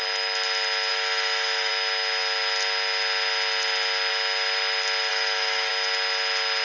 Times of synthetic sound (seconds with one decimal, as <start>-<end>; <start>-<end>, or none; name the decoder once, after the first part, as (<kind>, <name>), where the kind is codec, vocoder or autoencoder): 0.9-1.7 (autoencoder, DAC-VAE); 5.1-5.7